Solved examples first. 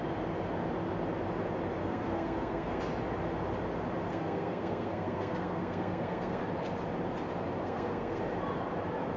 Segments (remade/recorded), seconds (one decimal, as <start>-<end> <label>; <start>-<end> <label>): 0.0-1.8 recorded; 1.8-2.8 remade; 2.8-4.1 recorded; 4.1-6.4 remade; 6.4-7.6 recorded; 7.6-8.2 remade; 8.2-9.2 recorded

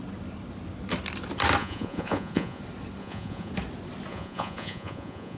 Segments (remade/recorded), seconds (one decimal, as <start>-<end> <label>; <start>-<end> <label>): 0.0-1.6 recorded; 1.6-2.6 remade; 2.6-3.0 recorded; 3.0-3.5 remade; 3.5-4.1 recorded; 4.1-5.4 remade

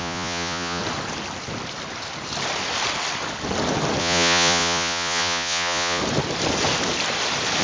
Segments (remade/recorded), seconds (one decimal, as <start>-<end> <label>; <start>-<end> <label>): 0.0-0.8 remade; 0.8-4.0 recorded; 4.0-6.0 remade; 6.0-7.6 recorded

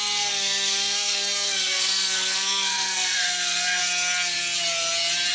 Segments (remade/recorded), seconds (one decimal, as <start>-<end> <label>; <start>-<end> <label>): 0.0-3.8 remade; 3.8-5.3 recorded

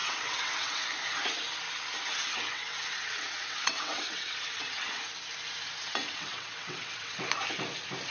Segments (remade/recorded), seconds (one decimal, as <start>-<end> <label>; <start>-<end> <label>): 0.0-0.8 remade; 0.8-2.5 recorded; 2.5-5.0 remade; 5.0-5.8 recorded; 5.8-7.2 remade; 7.2-8.1 recorded

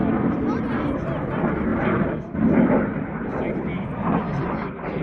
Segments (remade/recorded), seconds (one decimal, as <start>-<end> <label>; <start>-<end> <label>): 0.0-0.6 remade; 0.6-1.7 recorded; 1.7-2.6 remade; 2.6-3.3 recorded; 3.3-5.0 remade

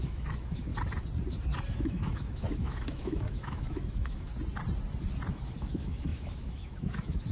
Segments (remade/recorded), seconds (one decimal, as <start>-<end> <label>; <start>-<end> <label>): 0.0-0.7 remade; 0.7-1.7 recorded; 1.7-4.3 remade; 4.3-5.3 recorded; 5.3-7.3 remade

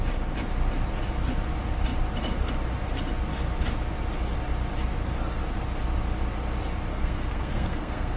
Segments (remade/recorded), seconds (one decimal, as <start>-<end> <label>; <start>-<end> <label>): 0.0-6.9 recorded; 6.9-8.2 remade